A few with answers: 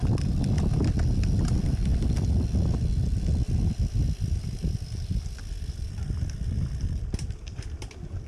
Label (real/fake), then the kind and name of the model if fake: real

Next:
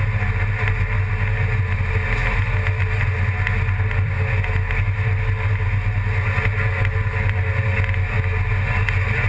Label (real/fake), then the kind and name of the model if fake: real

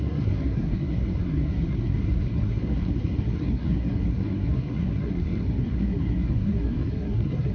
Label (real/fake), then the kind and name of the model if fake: fake, codec, SNAC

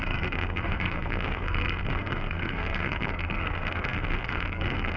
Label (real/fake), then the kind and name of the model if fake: fake, codec, SNAC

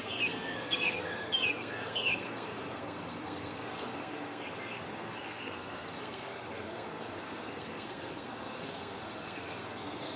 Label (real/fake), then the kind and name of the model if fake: fake, codec, SNAC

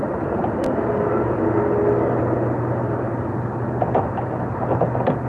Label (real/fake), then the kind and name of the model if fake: real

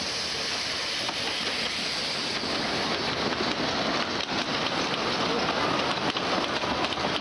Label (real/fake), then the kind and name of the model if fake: real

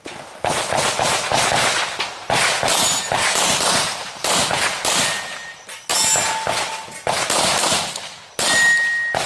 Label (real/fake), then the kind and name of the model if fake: real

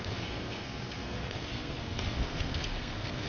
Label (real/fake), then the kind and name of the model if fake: fake, codec, SNAC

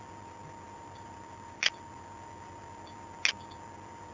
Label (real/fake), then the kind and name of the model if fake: real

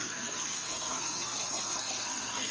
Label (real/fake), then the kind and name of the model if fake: fake, codec, SNAC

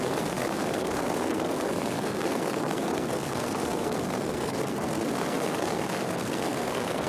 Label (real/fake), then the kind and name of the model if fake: fake, codec, SNAC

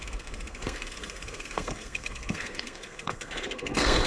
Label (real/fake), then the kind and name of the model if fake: fake, codec, SNAC